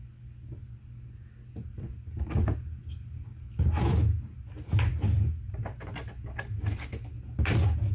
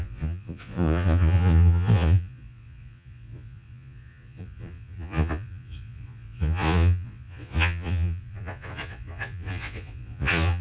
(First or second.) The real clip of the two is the first